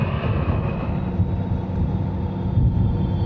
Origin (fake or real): real